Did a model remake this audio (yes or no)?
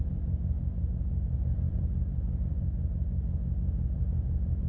yes